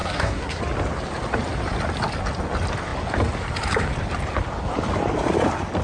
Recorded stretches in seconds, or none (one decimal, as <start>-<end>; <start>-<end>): 0.6-5.8